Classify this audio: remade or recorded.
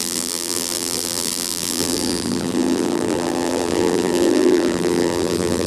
remade